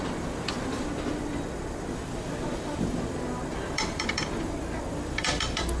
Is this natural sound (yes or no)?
no